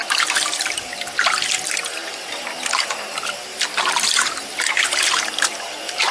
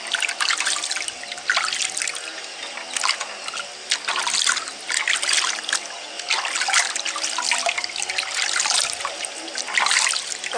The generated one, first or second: first